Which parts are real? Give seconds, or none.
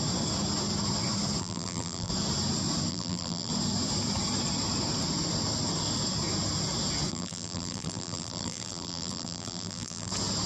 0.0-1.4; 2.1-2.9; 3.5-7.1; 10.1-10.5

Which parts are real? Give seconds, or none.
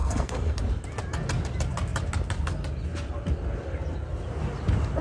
0.6-5.0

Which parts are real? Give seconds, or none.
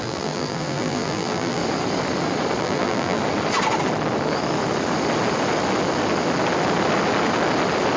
1.6-2.6; 3.2-8.0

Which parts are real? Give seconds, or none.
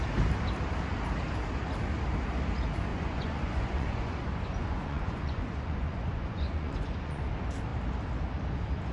0.0-2.9; 7.3-8.9